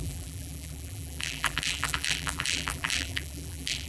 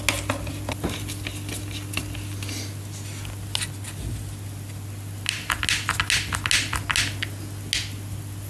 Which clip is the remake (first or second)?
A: first